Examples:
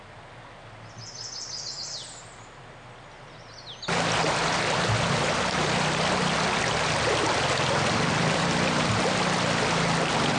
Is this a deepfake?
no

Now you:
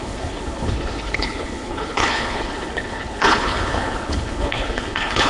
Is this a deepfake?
yes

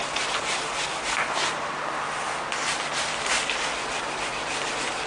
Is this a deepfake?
no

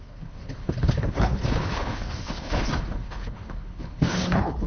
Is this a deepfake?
yes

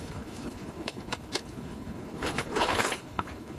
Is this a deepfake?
yes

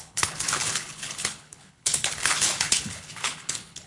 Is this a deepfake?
yes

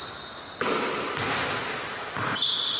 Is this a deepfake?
no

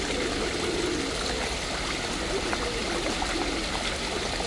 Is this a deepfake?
no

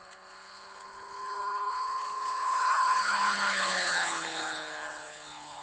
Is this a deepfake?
yes